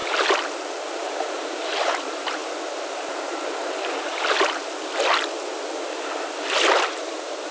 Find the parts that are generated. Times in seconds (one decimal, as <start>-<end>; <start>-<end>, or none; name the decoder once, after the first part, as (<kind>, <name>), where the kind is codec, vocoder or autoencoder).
1.0-2.4 (vocoder, BigVGAN v2); 6.9-7.5